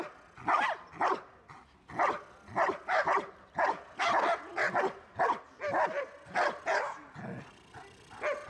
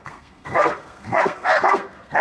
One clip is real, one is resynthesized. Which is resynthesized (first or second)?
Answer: second